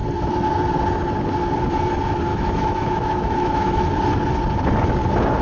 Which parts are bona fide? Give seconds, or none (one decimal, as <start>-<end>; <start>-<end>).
0.0-2.3; 3.8-5.4

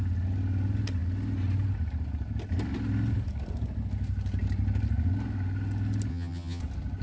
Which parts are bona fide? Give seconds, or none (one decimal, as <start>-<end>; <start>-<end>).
0.0-6.1; 6.6-7.0

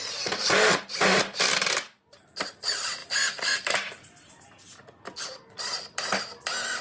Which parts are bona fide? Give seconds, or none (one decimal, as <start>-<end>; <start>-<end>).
0.0-6.8

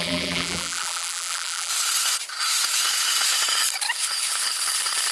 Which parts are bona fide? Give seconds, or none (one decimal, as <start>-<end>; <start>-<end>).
1.7-5.1